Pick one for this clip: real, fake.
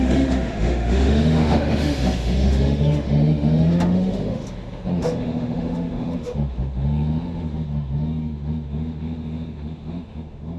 fake